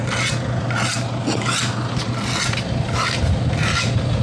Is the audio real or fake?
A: real